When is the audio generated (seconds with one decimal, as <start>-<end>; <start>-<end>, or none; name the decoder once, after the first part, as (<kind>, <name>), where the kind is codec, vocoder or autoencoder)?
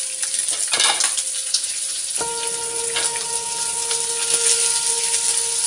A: 1.4-2.1 (vocoder, Vocos)